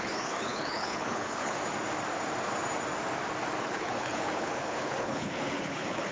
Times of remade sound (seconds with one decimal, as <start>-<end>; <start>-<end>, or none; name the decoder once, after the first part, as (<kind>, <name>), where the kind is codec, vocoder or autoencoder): 0.0-1.6 (codec, HILCodec); 3.6-6.1